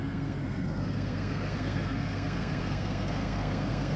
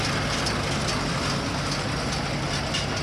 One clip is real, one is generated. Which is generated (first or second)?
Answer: first